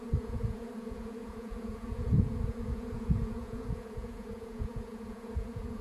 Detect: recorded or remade remade